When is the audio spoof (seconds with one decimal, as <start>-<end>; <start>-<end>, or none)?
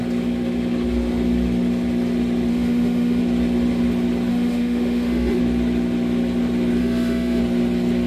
2.5-3.2; 4.3-5.4; 6.8-7.4